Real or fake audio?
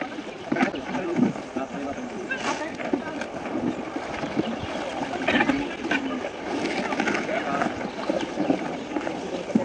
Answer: real